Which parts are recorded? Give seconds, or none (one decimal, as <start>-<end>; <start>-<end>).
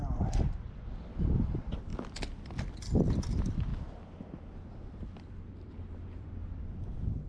1.9-2.6